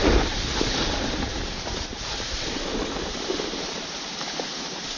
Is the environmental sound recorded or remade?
remade